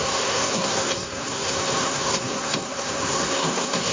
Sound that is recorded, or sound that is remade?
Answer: remade